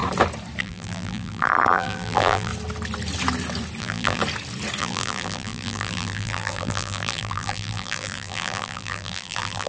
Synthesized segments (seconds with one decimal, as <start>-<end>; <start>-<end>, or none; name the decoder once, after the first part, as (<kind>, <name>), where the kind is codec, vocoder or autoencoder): 0.6-2.5 (vocoder, BigVGAN v2); 3.8-4.2; 4.8-9.7